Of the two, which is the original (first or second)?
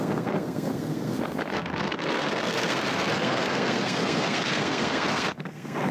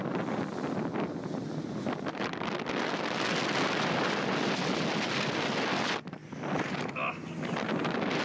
second